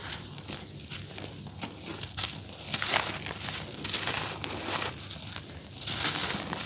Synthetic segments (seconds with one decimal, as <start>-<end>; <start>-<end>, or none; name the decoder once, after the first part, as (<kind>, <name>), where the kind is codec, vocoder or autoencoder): none